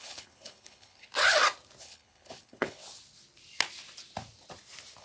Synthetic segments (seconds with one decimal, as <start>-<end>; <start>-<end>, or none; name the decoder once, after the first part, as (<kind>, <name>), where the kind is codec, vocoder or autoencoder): 0.0-1.1 (codec, HILCodec); 1.8-2.8